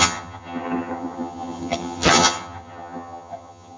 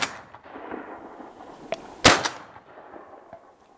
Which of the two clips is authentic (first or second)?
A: second